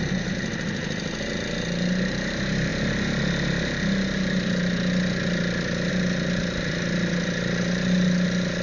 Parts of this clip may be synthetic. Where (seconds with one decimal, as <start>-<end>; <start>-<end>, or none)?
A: none